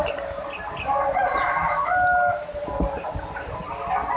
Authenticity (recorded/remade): recorded